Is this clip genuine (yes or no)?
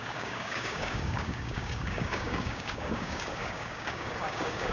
no